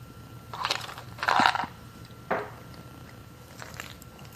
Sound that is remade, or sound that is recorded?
remade